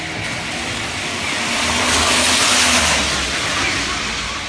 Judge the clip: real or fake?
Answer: real